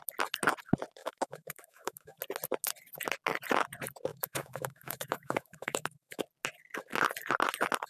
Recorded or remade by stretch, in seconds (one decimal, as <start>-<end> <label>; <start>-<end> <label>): 0.0-1.0 recorded; 1.0-2.2 remade; 2.2-4.1 recorded; 4.1-6.2 remade; 6.2-7.9 recorded